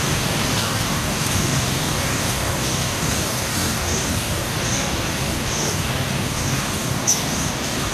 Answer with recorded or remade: remade